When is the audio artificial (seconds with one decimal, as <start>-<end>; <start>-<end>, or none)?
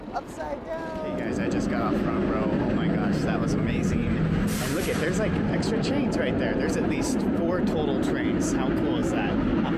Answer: 3.2-7.6; 9.0-9.8